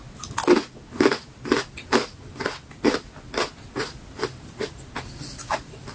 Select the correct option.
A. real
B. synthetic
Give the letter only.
A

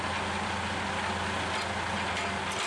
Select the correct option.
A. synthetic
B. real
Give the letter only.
B